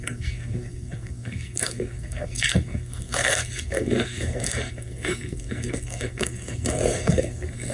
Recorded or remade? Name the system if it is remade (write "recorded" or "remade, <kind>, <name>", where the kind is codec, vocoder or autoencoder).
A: remade, codec, SNAC